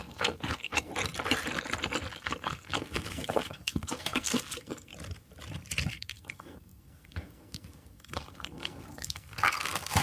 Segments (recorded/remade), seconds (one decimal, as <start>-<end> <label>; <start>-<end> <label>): 0.0-0.9 remade; 0.9-2.2 recorded; 2.2-4.9 remade; 4.9-5.9 recorded; 5.9-10.0 remade